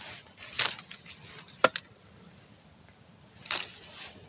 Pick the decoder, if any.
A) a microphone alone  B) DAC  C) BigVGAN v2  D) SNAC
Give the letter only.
A